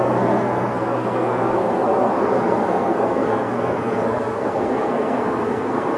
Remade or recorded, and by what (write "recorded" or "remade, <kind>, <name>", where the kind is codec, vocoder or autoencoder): remade, codec, SNAC